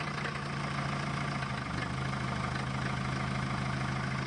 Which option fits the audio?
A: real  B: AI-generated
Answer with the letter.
A